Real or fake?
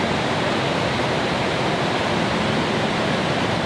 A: real